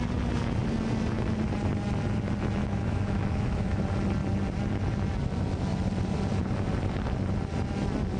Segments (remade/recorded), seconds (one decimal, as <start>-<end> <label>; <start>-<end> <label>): 0.0-2.6 recorded; 2.6-3.8 remade; 3.8-8.2 recorded